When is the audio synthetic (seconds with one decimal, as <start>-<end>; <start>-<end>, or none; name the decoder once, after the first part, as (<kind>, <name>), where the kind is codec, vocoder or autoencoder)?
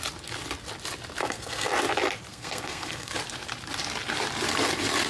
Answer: 1.2-1.7 (codec, SNAC); 2.3-3.1